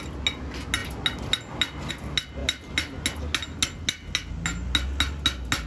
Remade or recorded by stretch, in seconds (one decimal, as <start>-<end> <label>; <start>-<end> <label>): 0.0-5.7 recorded